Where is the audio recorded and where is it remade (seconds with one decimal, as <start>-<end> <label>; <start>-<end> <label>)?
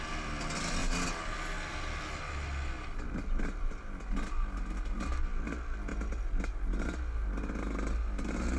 0.0-8.6 recorded